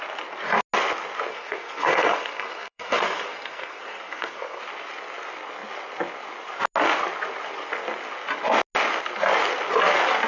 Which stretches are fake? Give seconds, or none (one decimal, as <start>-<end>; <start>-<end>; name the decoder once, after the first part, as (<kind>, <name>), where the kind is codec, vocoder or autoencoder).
1.3-4.6 (codec, SNAC)